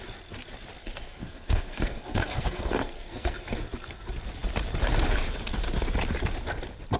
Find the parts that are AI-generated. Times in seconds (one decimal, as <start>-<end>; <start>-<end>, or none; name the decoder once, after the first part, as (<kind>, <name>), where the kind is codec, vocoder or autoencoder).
0.8-3.6 (codec, SNAC)